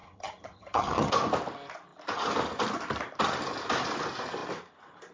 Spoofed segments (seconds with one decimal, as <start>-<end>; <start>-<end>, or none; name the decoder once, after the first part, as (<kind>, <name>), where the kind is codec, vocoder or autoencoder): 0.0-1.1 (vocoder, HiFi-GAN)